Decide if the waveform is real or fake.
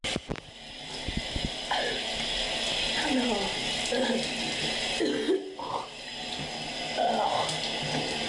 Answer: real